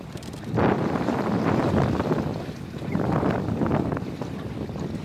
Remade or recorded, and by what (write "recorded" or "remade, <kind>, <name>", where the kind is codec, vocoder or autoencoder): recorded